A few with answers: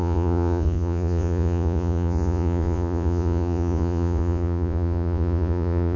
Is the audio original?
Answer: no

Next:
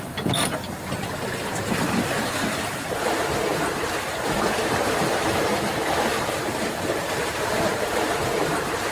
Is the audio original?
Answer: no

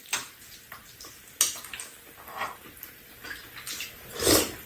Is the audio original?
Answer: yes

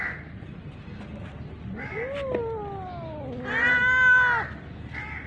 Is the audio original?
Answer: yes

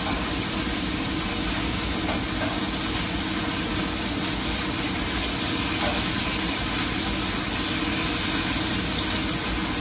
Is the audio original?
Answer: yes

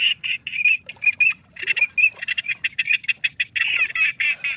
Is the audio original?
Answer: yes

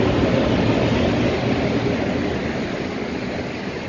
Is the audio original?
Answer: yes